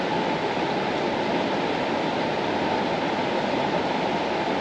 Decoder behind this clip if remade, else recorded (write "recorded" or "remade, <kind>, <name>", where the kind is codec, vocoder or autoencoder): recorded